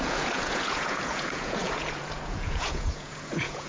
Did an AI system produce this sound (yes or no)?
yes